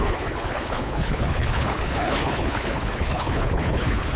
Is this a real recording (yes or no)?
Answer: no